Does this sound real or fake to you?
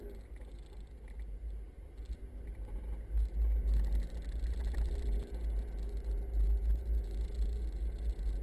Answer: real